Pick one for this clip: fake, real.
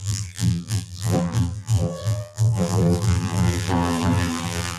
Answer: fake